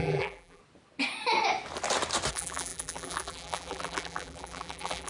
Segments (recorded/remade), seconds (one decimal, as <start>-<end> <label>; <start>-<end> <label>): 0.0-0.6 remade; 0.6-2.3 recorded; 2.3-5.1 remade